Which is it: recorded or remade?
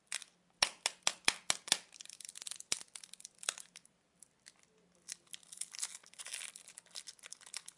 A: recorded